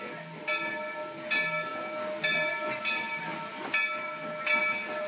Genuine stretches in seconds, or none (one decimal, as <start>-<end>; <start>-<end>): 0.0-5.1